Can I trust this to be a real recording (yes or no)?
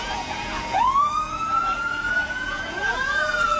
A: no